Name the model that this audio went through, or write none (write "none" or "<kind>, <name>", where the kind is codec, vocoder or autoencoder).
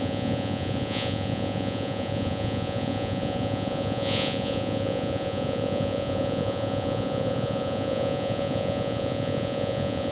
vocoder, Vocos